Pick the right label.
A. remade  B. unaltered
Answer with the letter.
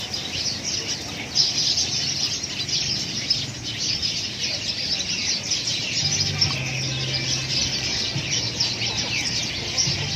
B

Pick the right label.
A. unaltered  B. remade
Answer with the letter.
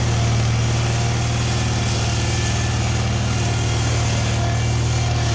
A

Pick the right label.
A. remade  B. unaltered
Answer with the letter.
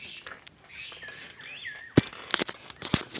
B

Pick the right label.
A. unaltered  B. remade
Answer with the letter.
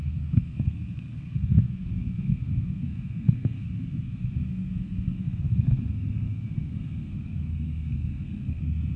B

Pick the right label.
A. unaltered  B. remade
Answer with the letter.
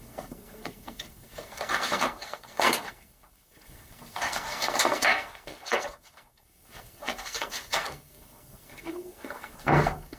B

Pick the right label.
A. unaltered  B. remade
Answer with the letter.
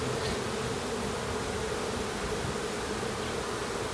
A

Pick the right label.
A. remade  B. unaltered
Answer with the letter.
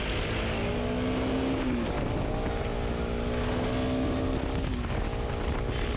B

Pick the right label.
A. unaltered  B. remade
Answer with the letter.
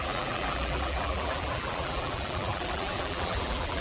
B